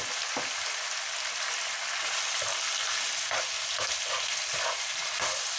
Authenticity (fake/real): real